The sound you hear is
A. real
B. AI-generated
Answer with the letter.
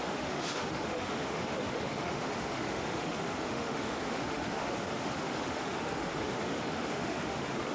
B